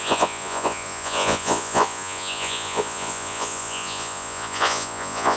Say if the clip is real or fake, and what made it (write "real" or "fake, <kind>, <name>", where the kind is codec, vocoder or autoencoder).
fake, vocoder, Vocos